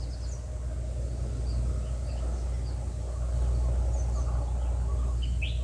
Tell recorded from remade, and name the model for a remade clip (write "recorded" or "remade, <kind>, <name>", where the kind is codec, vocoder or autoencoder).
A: recorded